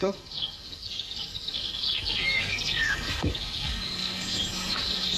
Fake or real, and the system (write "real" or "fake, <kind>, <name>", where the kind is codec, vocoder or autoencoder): fake, codec, SNAC